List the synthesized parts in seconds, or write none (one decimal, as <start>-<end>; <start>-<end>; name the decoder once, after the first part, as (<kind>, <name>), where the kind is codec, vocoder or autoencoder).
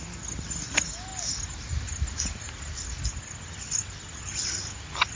none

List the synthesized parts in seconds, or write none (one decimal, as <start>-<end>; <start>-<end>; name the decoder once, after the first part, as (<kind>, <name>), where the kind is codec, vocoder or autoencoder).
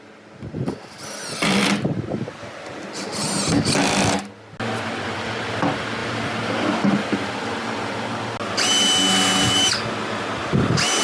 none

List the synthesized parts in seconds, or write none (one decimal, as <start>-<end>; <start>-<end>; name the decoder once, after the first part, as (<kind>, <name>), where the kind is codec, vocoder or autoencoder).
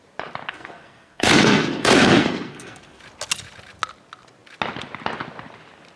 0.5-3.0 (codec, SNAC)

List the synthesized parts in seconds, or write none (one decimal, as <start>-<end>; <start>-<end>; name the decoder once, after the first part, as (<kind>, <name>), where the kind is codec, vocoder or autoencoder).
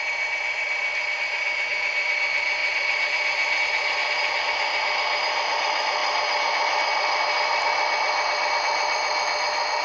0.0-9.8 (vocoder, BigVGAN v2)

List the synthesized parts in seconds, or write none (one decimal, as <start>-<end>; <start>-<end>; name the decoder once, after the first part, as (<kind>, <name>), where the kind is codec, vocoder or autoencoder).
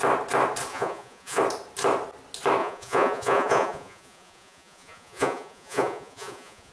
0.7-1.4 (vocoder, Vocos); 2.6-6.7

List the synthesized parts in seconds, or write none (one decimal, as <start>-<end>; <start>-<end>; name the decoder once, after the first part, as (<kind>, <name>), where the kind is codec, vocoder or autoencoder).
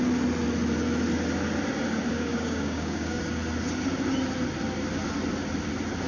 2.1-3.2 (codec, DAC)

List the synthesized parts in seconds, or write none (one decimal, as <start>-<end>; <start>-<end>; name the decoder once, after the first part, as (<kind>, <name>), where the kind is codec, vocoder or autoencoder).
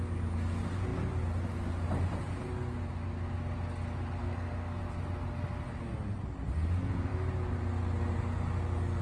4.2-4.8 (codec, SNAC)